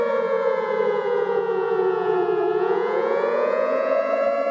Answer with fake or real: fake